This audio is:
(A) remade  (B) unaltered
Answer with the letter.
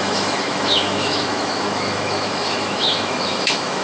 A